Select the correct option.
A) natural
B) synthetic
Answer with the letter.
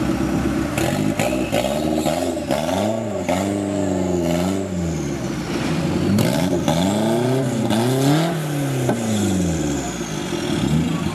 A